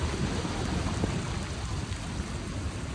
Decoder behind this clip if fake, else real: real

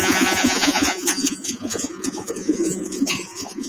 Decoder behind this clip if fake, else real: fake, vocoder, Vocos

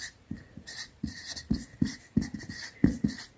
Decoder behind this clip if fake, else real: fake, vocoder, Vocos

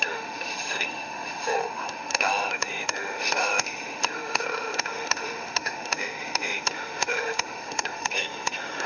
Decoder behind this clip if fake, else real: fake, autoencoder, DAC-VAE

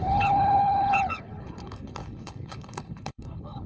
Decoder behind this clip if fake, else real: fake, codec, HILCodec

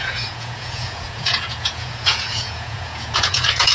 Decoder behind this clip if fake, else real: fake, vocoder, Vocos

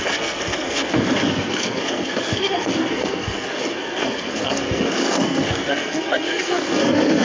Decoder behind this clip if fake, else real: fake, codec, SNAC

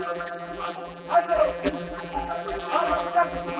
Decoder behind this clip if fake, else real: fake, vocoder, BigVGAN v2